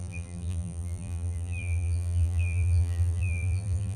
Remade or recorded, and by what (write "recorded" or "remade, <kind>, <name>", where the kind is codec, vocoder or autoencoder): remade, vocoder, BigVGAN v2